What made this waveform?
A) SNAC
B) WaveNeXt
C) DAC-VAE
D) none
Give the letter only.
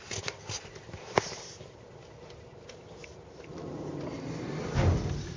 D